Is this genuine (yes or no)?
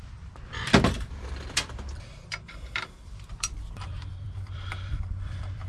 no